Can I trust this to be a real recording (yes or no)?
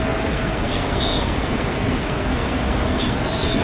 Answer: no